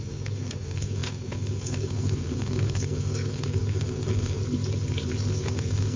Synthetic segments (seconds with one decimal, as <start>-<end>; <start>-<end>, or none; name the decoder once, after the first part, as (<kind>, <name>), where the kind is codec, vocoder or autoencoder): 0.0-4.4 (codec, SNAC); 5.3-6.0